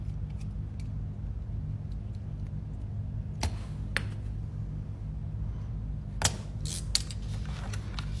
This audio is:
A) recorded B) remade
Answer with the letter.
A